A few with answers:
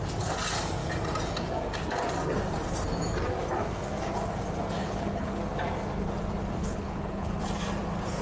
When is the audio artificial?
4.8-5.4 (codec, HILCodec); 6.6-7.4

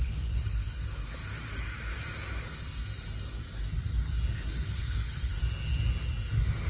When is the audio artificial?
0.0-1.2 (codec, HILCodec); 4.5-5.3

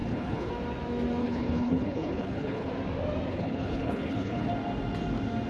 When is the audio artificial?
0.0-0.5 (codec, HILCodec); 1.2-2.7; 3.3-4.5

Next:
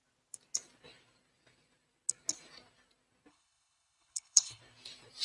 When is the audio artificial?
3.3-4.6 (codec, HILCodec)

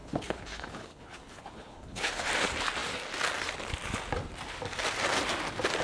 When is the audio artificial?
0.0-2.3 (codec, HILCodec)

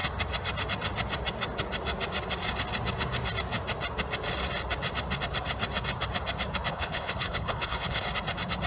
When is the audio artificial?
6.7-8.1 (codec, HILCodec)